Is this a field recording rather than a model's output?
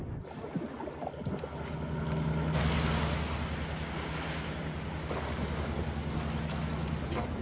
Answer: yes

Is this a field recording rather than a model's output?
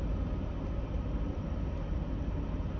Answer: yes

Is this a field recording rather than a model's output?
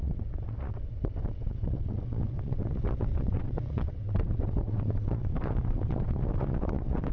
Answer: no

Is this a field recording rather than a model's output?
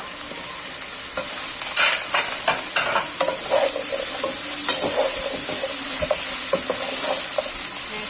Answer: yes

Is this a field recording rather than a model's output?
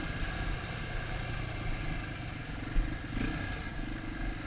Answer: yes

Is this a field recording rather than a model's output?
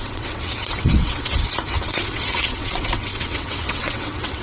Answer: no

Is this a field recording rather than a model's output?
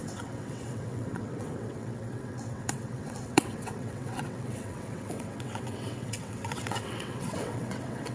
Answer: no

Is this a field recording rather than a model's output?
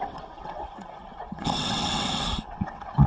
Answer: no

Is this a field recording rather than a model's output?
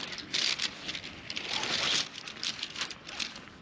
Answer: yes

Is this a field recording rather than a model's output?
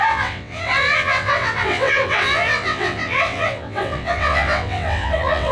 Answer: no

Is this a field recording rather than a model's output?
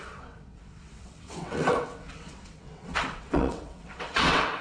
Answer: no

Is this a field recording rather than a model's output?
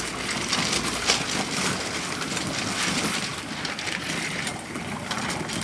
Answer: yes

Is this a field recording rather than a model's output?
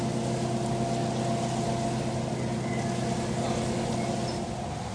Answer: yes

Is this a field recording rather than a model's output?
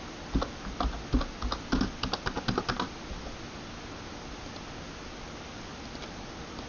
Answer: yes